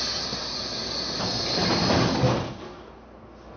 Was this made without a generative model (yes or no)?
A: yes